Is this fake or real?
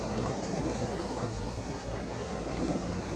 fake